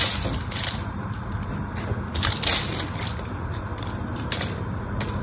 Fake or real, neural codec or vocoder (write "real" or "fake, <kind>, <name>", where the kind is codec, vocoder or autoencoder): real